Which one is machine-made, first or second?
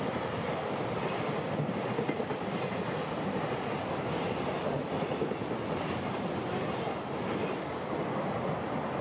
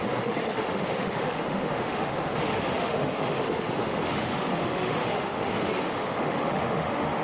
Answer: second